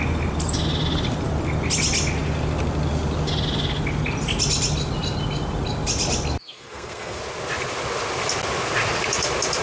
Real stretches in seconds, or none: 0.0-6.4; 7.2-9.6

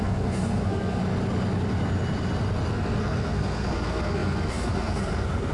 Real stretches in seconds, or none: 1.0-2.7

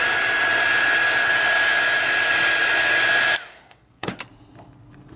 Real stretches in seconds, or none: 0.0-3.5; 4.1-5.2

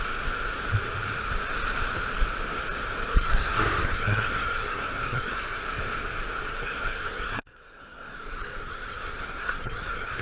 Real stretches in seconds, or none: 0.0-3.1; 5.6-6.5

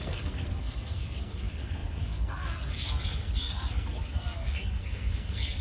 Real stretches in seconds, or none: none

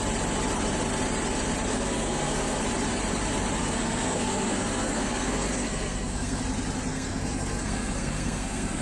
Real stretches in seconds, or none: 0.0-1.7; 2.6-3.6; 6.4-6.9

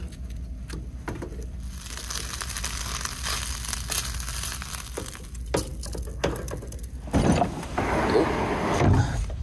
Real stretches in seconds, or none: 0.0-9.4